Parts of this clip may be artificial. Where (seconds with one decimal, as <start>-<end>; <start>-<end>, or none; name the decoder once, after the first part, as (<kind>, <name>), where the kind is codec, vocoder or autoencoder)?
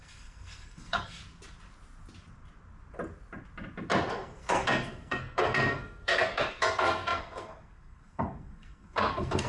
0.0-1.2 (codec, SNAC); 4.1-9.5